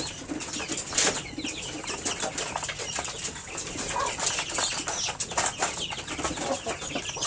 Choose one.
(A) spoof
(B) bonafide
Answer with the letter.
B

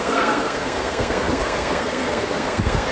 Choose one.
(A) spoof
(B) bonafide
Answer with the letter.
A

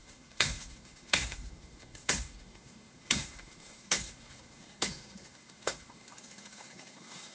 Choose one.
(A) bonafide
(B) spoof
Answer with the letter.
B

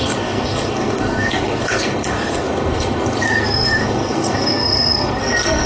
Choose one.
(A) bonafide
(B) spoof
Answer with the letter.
B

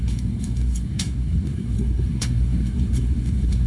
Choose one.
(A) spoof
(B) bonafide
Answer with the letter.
A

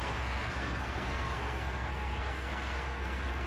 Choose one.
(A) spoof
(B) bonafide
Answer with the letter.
A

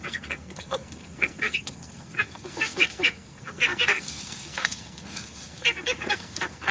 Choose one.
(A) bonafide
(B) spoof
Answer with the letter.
B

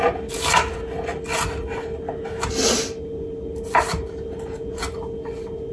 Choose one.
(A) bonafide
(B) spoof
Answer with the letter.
A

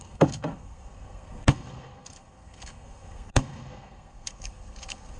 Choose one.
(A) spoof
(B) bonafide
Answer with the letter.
A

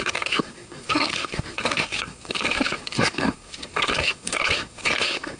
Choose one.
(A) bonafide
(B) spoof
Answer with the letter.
B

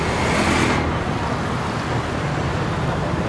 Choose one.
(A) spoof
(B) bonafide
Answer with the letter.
B